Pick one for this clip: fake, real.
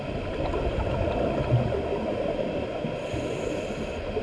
real